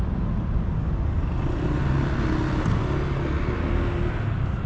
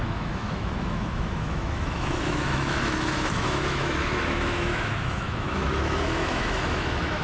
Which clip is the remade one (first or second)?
second